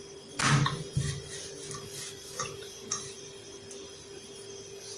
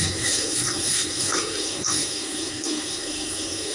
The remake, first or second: second